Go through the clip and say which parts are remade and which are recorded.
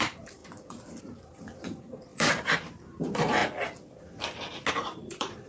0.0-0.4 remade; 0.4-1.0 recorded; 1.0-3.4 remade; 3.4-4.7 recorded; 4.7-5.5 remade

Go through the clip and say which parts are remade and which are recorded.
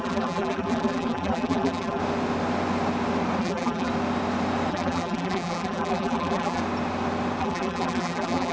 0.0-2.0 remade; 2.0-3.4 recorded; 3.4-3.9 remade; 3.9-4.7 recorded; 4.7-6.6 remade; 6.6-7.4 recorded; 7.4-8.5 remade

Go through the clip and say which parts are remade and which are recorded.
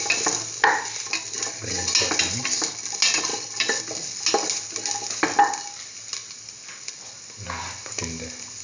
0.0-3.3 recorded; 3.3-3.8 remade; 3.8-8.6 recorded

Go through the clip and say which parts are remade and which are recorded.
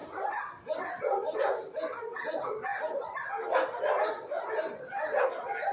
0.0-5.7 recorded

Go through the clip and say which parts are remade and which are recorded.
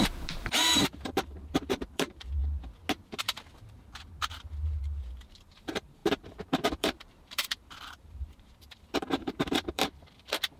0.0-2.4 remade; 2.4-3.2 recorded; 3.2-9.8 remade; 9.8-10.6 recorded